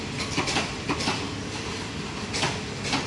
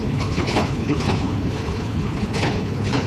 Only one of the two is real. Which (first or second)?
first